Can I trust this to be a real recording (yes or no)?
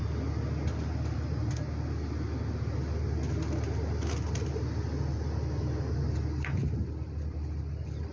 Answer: yes